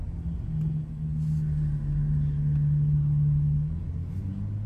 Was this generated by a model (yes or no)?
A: no